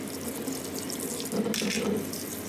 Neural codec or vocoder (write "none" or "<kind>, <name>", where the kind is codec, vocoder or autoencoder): none